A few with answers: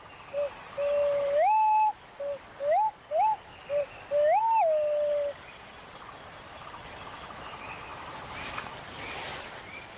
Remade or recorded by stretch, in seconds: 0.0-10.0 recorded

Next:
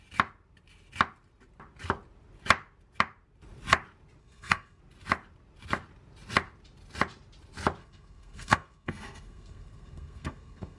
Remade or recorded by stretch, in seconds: 0.0-4.2 recorded; 4.2-4.8 remade; 4.8-7.8 recorded; 7.8-10.8 remade

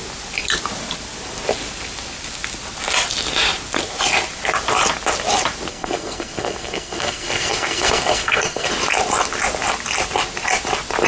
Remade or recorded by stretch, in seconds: 0.0-5.7 recorded; 5.7-8.7 remade; 8.7-11.1 recorded

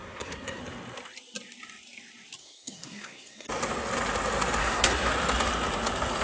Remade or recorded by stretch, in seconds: 0.0-0.6 remade; 0.6-2.4 recorded; 2.4-3.5 remade; 3.5-4.6 recorded; 4.6-5.1 remade; 5.1-6.2 recorded

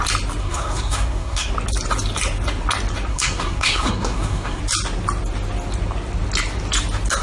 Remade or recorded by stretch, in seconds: 0.0-0.4 recorded; 0.4-1.5 remade; 1.5-3.1 recorded; 3.1-4.6 remade; 4.6-7.2 recorded

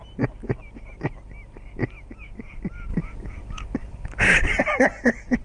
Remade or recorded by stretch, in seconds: 0.0-5.4 recorded

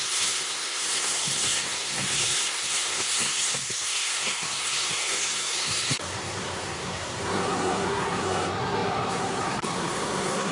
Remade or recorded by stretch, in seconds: 0.0-10.5 remade

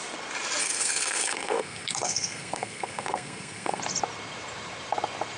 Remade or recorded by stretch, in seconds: 0.0-0.6 recorded; 0.6-3.8 remade; 3.8-5.4 recorded